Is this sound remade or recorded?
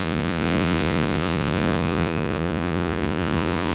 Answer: remade